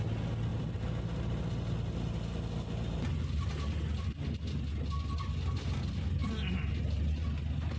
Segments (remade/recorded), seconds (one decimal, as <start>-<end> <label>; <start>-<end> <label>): 0.0-7.8 recorded